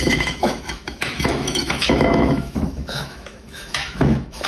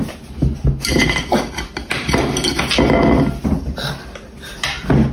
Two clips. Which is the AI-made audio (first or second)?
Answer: first